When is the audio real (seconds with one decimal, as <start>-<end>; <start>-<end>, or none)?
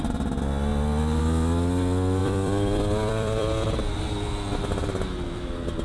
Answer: 0.0-2.2; 3.8-5.8